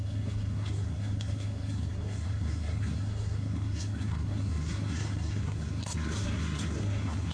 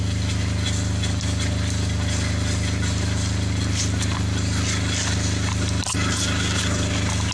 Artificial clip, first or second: first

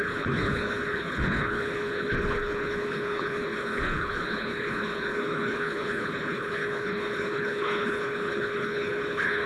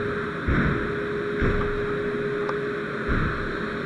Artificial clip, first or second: first